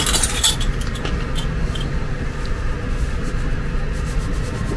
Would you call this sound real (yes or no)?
yes